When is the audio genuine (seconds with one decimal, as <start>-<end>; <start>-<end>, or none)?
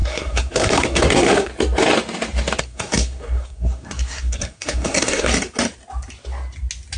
1.5-2.6; 5.3-7.0